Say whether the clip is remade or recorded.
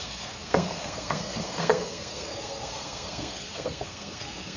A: remade